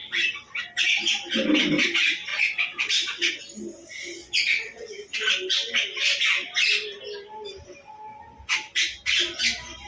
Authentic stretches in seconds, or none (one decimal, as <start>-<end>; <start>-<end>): 0.0-2.3; 3.4-4.2; 4.9-9.9